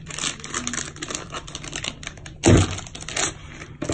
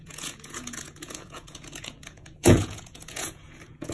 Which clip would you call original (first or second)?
first